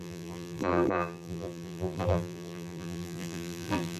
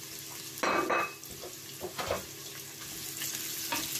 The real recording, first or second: second